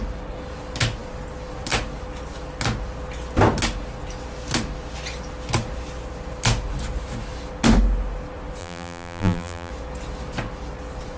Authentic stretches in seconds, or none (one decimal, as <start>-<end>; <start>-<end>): 0.0-8.6; 9.7-11.2